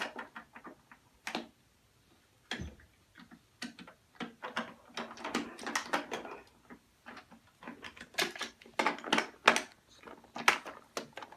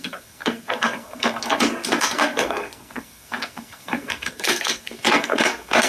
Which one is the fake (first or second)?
second